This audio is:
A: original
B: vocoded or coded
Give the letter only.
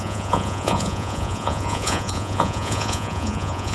B